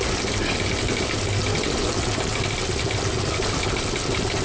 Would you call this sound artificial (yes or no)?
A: no